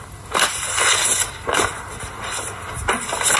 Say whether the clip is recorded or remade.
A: recorded